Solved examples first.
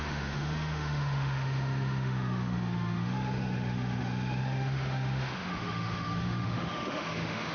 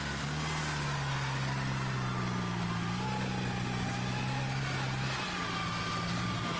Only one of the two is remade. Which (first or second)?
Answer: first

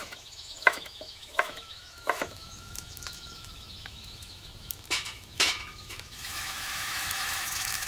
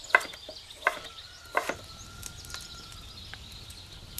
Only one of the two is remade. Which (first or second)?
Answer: first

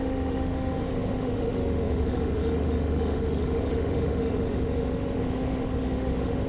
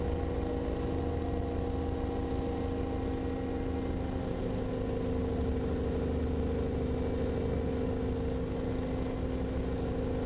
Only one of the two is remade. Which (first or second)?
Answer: first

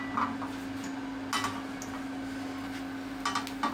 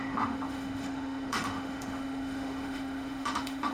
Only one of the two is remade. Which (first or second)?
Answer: second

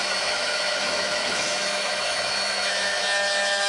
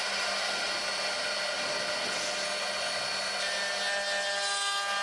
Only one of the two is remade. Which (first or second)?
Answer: first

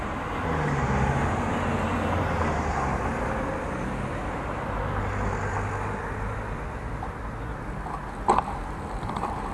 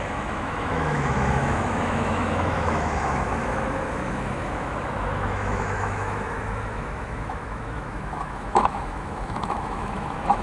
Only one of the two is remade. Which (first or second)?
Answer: second